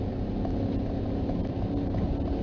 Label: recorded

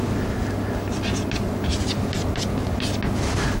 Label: recorded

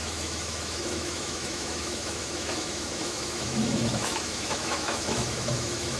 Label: remade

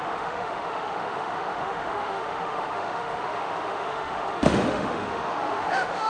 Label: remade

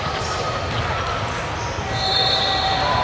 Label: recorded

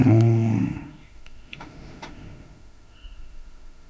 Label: remade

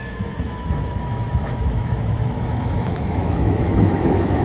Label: remade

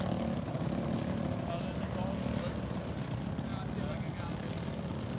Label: recorded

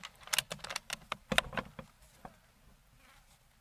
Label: recorded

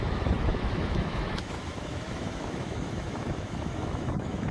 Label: remade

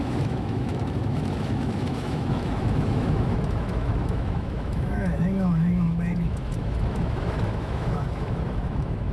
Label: remade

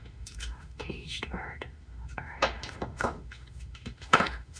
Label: remade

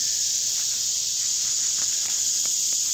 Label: recorded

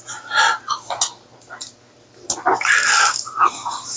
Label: recorded